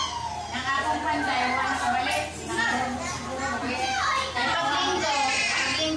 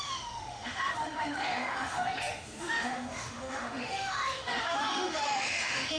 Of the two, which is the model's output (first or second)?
second